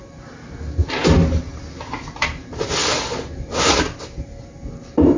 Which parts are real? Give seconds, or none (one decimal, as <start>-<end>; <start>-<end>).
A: 0.0-5.2